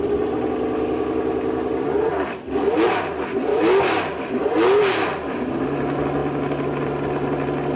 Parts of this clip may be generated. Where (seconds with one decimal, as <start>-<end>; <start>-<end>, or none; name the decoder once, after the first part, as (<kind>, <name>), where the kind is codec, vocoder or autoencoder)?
3.5-4.2 (autoencoder, DAC-VAE)